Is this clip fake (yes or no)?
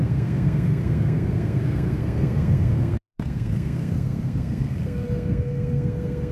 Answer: yes